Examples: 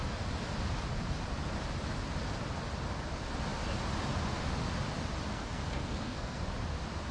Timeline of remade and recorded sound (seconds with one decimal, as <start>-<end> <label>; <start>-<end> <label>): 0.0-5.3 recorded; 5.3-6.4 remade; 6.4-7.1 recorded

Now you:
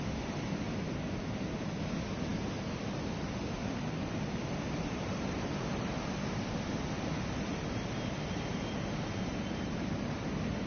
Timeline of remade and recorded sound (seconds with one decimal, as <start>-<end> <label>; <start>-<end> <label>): 0.0-10.7 recorded

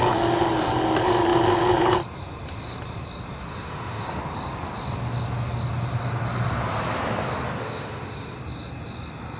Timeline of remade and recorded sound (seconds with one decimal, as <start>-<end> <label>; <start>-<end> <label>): 0.0-3.5 recorded; 3.5-4.2 remade; 4.2-7.6 recorded; 7.6-8.4 remade; 8.4-9.4 recorded

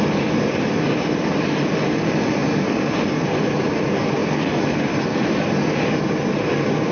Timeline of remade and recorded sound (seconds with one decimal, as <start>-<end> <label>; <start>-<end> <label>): 0.0-6.9 recorded

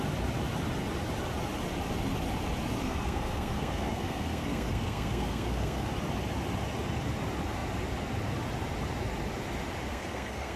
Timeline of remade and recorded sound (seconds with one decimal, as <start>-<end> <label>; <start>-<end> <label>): 0.0-2.8 recorded; 2.8-5.9 remade; 5.9-9.9 recorded; 9.9-10.6 remade